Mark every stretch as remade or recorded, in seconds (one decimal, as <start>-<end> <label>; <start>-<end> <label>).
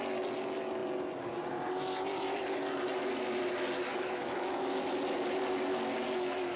0.0-3.9 recorded; 3.9-5.0 remade; 5.0-6.6 recorded